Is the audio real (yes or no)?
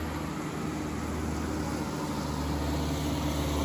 yes